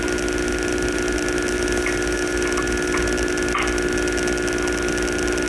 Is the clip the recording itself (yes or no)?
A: yes